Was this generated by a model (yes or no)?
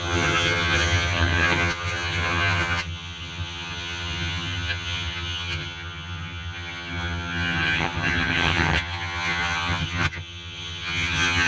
yes